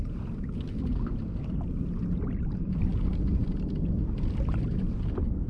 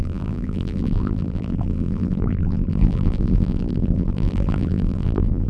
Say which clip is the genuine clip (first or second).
first